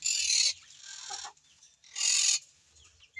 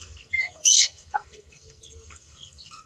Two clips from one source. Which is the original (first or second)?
first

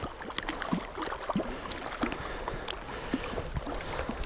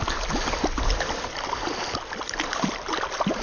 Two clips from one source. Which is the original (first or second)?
first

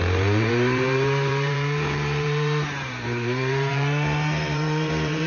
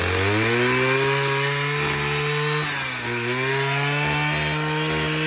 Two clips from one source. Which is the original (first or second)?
second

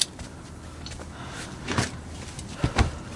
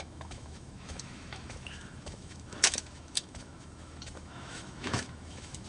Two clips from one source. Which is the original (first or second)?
first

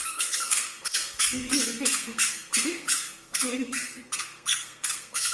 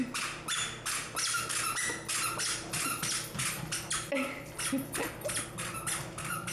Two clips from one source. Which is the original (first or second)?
second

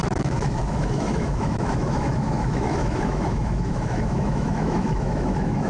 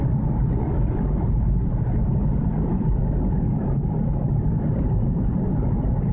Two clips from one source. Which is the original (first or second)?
second